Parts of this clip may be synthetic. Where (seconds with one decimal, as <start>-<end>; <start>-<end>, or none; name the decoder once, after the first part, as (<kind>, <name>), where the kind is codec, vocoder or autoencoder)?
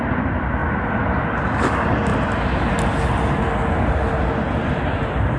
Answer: none